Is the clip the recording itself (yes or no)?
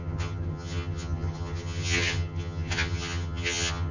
no